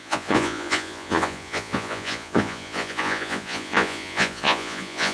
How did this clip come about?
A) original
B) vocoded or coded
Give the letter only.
B